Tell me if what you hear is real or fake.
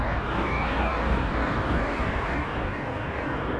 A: fake